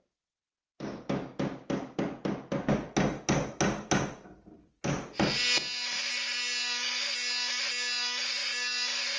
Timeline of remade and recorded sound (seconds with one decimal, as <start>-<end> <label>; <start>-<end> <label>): 0.0-9.2 recorded